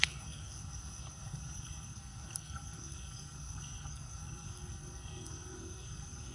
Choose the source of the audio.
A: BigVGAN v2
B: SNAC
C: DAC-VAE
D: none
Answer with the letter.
B